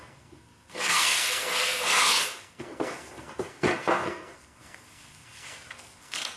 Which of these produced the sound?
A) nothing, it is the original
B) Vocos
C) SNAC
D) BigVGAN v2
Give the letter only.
C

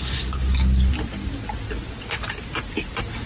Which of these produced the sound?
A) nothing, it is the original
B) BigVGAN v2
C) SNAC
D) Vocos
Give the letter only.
A